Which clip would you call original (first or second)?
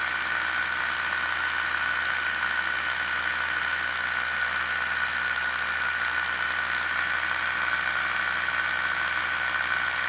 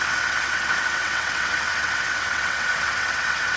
first